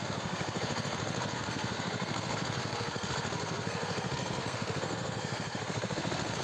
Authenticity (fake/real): fake